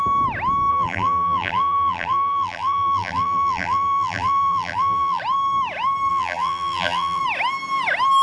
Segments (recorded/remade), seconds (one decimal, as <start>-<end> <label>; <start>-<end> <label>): 0.0-0.7 recorded; 0.7-5.2 remade; 5.2-6.1 recorded; 6.1-7.2 remade; 7.2-8.2 recorded

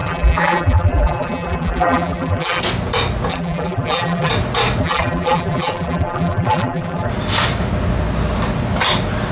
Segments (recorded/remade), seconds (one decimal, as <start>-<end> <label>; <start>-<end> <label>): 0.0-2.6 remade; 2.6-3.3 recorded; 3.3-4.3 remade; 4.3-4.8 recorded; 4.8-7.1 remade; 7.1-9.3 recorded

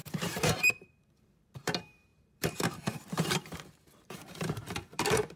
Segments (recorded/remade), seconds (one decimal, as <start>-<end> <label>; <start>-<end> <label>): 0.0-5.4 remade

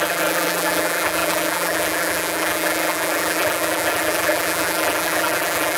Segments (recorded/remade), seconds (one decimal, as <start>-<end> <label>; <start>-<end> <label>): 0.0-5.8 remade

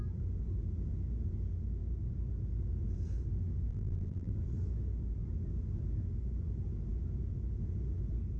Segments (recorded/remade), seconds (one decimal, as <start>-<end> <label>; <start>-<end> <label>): 0.0-3.7 recorded; 3.7-4.3 remade; 4.3-8.4 recorded

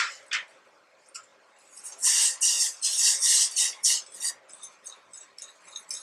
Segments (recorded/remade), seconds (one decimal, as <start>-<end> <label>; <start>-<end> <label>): 0.0-6.0 recorded

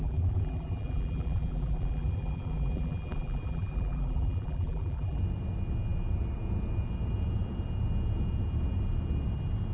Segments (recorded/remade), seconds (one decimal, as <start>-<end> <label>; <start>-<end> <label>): 0.0-5.2 remade; 5.2-9.7 recorded